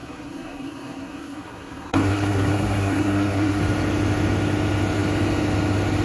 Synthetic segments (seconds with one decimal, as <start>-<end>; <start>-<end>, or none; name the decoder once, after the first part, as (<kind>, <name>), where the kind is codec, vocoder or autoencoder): 0.0-3.6 (codec, SNAC)